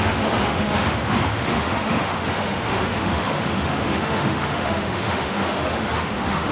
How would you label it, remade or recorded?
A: remade